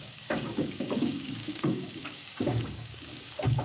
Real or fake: fake